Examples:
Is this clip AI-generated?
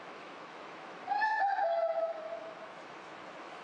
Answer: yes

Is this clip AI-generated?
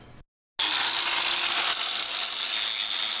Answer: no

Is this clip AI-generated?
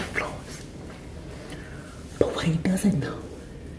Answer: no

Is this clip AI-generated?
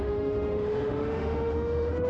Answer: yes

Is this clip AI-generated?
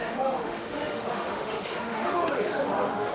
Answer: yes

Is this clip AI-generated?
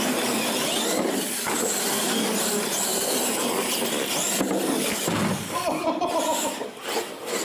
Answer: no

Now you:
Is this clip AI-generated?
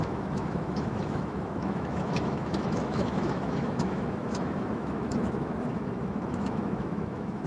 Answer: yes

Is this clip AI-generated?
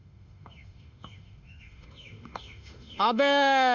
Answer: yes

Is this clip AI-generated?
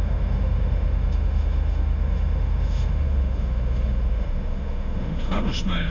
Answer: yes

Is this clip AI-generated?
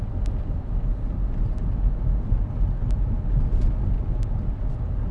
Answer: no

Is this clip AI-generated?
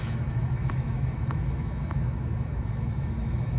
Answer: yes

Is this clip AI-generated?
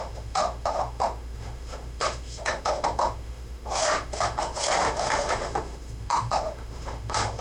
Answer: yes